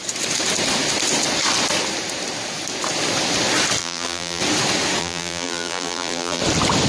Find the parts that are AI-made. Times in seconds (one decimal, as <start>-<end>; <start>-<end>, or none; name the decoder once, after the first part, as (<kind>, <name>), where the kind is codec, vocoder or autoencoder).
3.8-4.4 (vocoder, BigVGAN v2); 5.0-6.4

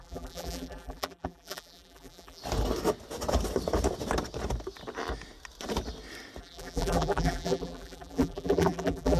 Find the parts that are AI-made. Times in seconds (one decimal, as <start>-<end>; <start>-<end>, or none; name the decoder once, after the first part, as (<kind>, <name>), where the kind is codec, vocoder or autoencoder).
0.0-2.4 (vocoder, BigVGAN v2); 6.4-9.2

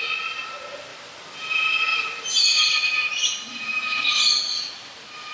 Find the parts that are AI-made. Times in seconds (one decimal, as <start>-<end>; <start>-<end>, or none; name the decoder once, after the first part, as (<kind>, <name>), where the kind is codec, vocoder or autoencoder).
1.9-5.3 (vocoder, BigVGAN v2)

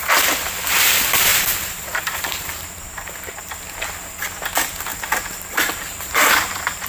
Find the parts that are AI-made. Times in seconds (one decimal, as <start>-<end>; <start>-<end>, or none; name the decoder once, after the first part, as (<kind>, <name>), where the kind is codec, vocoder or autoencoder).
1.3-3.5 (vocoder, BigVGAN v2); 4.9-6.9